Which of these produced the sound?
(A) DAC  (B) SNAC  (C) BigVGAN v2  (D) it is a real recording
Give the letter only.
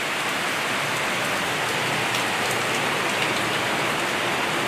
D